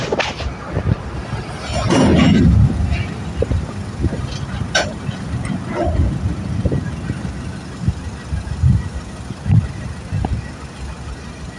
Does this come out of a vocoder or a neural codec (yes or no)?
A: no